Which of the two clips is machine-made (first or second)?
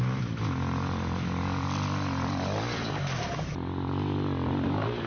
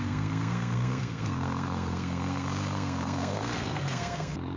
second